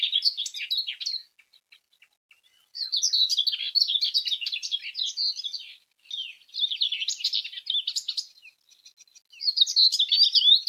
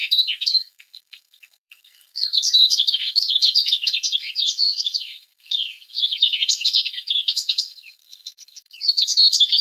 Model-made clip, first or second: second